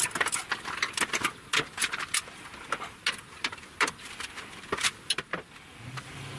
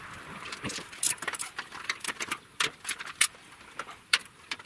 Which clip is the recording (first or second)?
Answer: first